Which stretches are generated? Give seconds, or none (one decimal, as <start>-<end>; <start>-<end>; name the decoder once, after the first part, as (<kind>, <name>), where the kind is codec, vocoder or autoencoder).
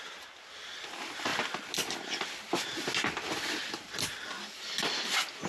none